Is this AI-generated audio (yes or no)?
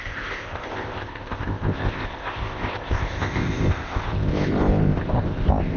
yes